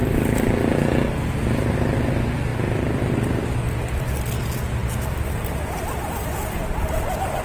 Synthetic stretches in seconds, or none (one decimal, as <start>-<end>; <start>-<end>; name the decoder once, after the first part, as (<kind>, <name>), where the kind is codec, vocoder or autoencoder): 0.0-0.7 (vocoder, BigVGAN v2); 2.5-3.2